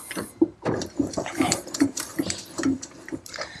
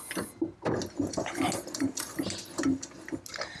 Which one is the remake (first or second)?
first